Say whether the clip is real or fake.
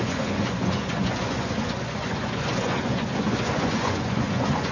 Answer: fake